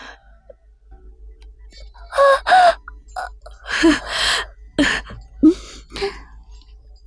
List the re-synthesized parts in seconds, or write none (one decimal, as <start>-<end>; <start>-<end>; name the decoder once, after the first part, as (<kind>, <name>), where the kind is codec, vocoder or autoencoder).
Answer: none